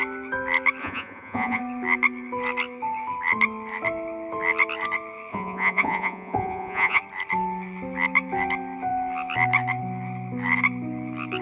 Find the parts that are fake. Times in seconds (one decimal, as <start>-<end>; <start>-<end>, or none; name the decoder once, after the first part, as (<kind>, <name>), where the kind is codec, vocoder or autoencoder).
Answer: 0.8-1.6 (vocoder, Vocos); 5.3-7.0